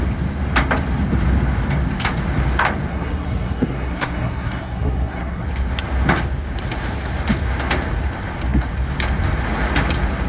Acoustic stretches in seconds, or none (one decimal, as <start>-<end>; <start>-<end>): 0.0-2.9; 5.4-10.3